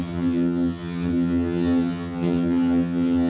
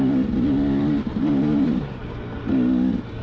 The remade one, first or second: first